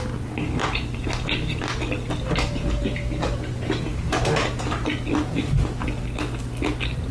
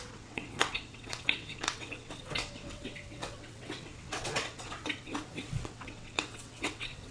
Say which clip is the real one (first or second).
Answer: first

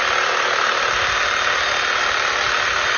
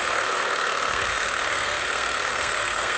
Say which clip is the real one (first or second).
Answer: first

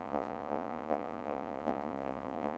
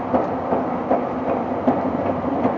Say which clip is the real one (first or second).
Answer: second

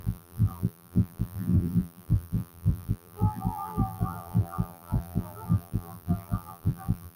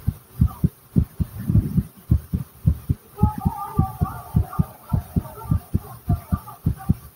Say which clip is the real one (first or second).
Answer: second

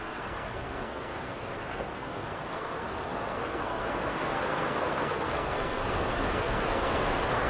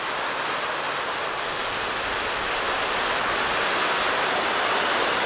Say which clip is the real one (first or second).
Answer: second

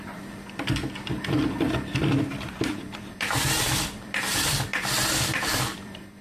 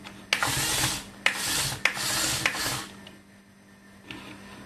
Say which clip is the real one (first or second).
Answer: second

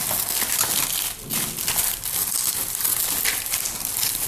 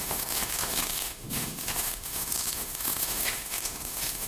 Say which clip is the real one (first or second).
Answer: first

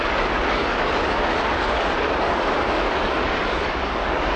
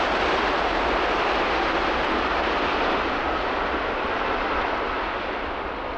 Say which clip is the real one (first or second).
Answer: second